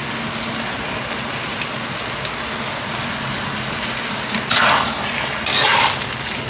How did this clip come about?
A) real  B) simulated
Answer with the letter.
A